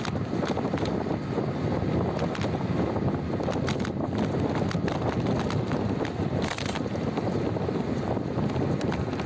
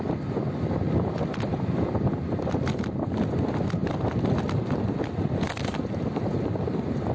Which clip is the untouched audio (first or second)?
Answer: first